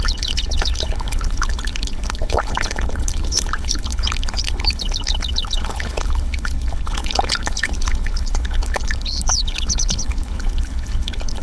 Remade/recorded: remade